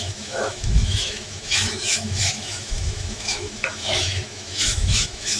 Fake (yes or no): yes